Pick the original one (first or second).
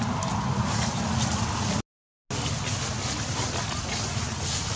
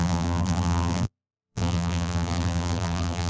first